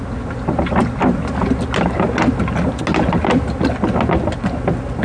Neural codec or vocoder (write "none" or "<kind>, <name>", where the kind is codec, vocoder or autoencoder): none